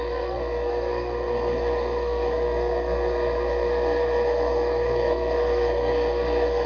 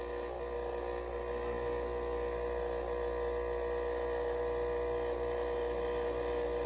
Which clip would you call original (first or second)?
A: second